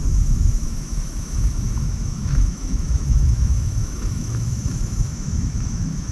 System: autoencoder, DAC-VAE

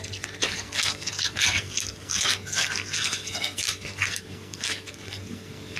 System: codec, SNAC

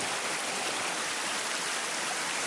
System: none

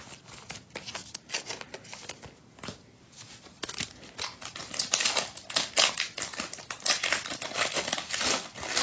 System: none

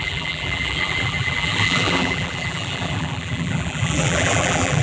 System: vocoder, BigVGAN v2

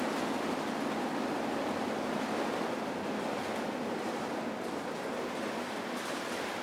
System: none